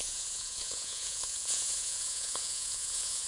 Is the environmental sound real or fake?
fake